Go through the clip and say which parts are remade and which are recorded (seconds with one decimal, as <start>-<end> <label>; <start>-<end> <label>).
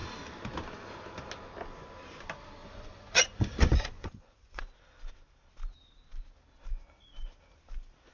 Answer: 0.0-2.6 recorded; 2.6-4.6 remade; 4.6-8.1 recorded